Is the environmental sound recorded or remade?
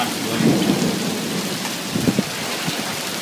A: recorded